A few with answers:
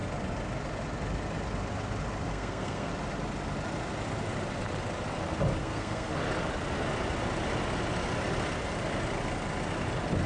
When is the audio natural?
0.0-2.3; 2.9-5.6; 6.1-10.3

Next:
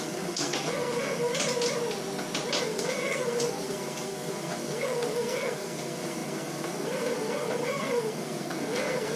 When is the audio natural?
1.3-2.6

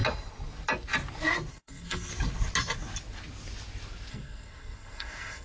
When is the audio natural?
0.0-1.5; 2.1-4.1

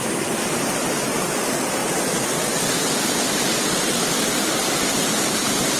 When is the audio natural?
0.0-5.8

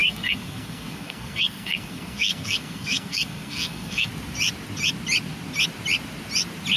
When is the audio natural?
4.1-6.8

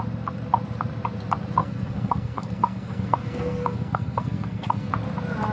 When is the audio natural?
0.0-1.6; 4.9-5.5